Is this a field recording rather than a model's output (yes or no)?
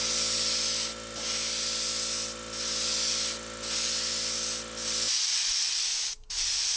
yes